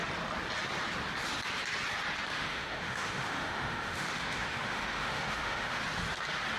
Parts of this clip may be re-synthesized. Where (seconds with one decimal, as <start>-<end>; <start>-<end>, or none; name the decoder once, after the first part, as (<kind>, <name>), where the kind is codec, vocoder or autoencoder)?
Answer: 2.3-5.8 (autoencoder, DAC-VAE)